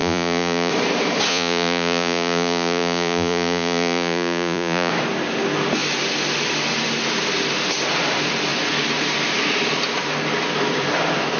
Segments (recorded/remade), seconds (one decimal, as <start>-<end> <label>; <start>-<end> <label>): 0.0-0.7 remade; 0.7-1.3 recorded; 1.3-4.9 remade; 4.9-11.4 recorded